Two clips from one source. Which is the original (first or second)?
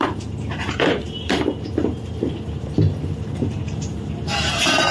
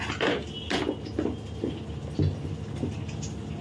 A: second